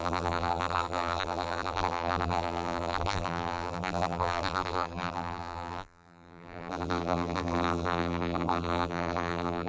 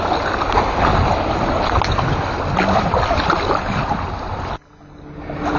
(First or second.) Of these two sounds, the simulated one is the first